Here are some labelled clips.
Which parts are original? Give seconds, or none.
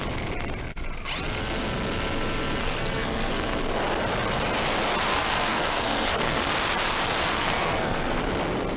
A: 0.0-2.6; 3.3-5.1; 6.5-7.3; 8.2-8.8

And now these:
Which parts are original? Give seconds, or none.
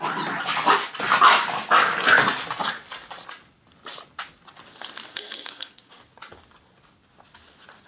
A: 0.0-5.1; 5.9-7.9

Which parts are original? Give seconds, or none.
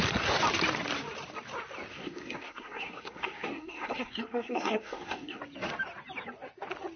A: 0.0-1.9; 5.4-7.0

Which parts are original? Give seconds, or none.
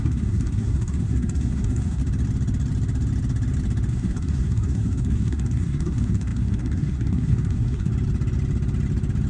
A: 2.0-3.9; 7.9-9.3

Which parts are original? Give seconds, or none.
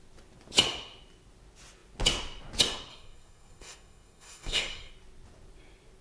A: 0.0-2.9; 4.9-6.0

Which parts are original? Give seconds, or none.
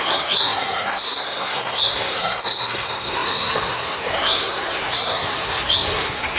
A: none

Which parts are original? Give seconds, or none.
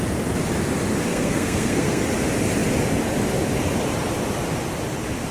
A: 0.0-1.1; 2.0-5.3